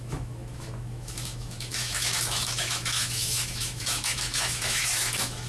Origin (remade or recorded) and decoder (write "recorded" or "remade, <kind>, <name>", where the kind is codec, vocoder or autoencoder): remade, autoencoder, DAC-VAE